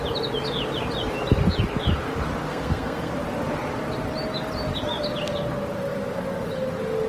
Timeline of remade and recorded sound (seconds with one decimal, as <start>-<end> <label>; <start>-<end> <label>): 0.0-2.5 recorded; 2.5-3.1 remade; 3.1-7.1 recorded